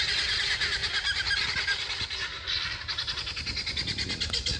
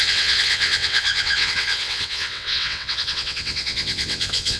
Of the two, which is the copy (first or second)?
second